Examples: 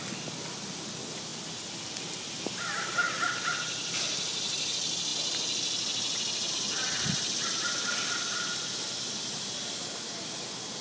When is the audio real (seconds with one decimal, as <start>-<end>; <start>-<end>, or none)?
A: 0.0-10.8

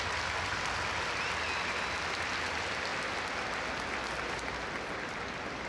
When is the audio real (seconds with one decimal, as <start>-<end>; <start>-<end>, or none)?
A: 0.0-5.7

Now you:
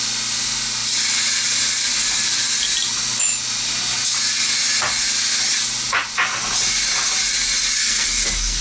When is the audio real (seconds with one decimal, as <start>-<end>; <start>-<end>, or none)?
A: 0.0-7.8